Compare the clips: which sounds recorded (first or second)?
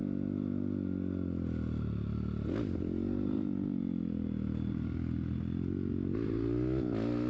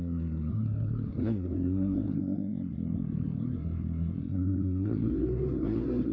first